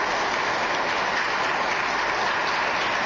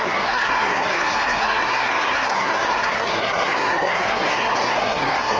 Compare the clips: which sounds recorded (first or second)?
first